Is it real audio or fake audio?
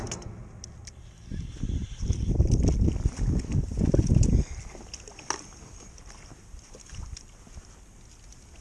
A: real